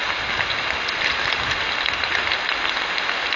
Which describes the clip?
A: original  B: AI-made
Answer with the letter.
A